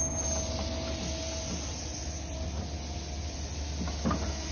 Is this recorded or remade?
recorded